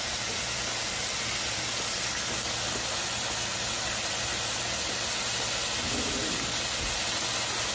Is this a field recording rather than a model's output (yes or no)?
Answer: yes